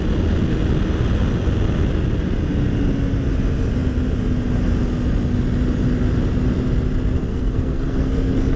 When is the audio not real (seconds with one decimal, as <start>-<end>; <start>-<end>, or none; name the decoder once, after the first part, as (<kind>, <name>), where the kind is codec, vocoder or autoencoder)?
7.3-8.6 (codec, SNAC)